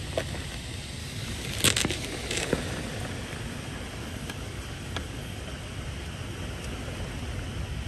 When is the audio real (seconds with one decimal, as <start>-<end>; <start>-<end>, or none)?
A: 0.0-1.0; 1.6-4.0; 5.4-7.9